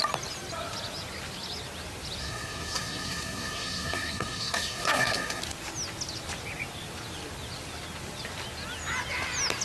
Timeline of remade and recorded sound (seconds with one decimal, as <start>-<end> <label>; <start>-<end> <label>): 0.0-2.2 recorded; 2.2-5.4 remade; 5.4-9.6 recorded